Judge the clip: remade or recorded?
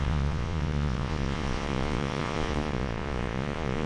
remade